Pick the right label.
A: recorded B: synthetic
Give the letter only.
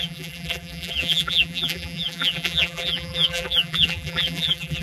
B